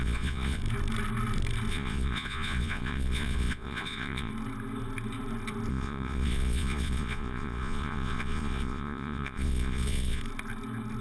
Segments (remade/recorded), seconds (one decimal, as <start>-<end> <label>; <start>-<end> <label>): 0.0-0.6 remade; 0.6-1.7 recorded; 1.7-4.3 remade; 4.3-5.7 recorded; 5.7-10.2 remade; 10.2-11.0 recorded